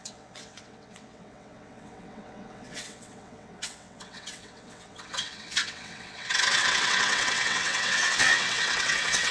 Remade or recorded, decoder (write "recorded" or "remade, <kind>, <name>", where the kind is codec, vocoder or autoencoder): remade, vocoder, WaveNeXt